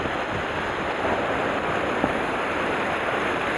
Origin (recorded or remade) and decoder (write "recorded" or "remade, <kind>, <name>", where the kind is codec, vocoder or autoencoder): recorded